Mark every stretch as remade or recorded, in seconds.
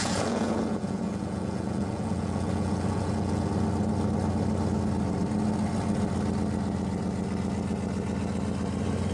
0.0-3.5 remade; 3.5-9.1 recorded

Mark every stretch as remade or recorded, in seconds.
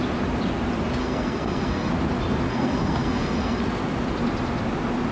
0.0-1.0 recorded; 1.0-1.9 remade; 1.9-2.5 recorded; 2.5-3.6 remade; 3.6-5.1 recorded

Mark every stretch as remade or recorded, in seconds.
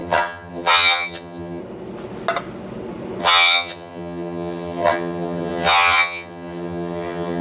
0.0-1.6 remade; 1.6-3.2 recorded; 3.2-7.4 remade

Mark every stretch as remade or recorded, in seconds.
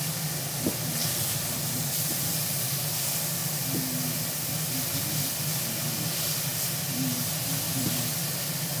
0.0-1.0 recorded; 1.0-2.9 remade; 2.9-8.8 recorded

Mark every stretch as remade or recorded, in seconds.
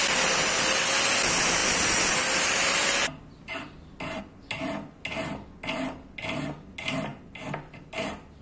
0.0-8.4 recorded